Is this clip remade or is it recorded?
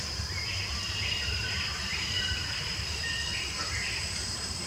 remade